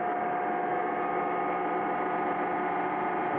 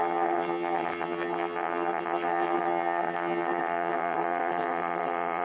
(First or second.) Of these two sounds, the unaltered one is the first